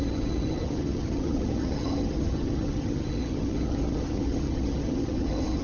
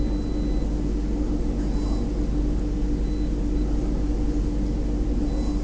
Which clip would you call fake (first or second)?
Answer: first